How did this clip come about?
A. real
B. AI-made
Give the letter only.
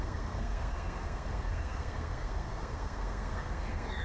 B